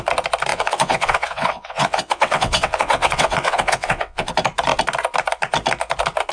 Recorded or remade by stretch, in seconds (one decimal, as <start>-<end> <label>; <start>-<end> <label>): 0.0-0.5 recorded; 0.5-4.3 remade; 4.3-6.3 recorded